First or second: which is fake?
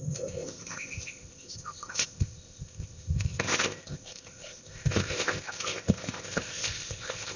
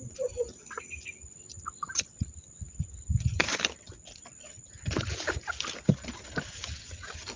first